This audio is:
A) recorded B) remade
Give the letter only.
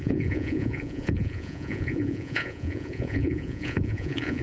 B